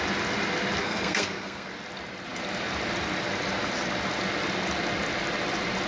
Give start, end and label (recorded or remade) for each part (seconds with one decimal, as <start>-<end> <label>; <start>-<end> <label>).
0.0-0.8 recorded; 0.8-1.7 remade; 1.7-5.9 recorded

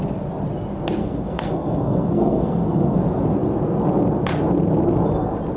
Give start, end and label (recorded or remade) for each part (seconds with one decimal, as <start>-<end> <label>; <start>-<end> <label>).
0.0-1.0 recorded; 1.0-3.0 remade; 3.0-5.6 recorded